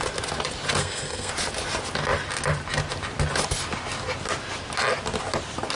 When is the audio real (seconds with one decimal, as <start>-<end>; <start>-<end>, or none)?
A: 0.0-0.8; 1.3-5.8